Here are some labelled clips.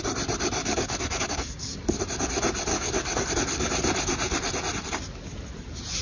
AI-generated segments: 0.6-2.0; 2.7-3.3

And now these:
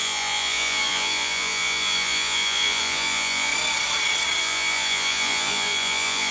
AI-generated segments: 0.0-3.5; 4.4-6.3

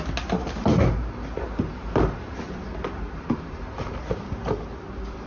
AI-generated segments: 1.0-4.2

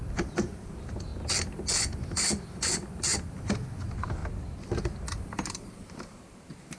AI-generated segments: 0.6-1.1; 2.4-3.1; 3.8-4.2; 5.3-6.8